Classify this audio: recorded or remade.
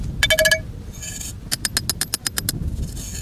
recorded